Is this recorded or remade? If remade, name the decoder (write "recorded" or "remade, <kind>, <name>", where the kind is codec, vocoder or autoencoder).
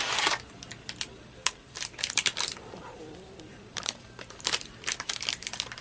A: remade, vocoder, BigVGAN v2